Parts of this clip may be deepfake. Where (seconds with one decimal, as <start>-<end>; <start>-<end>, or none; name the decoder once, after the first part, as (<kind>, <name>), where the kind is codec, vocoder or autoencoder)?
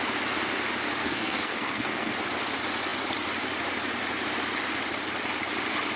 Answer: 1.0-2.1 (codec, SNAC)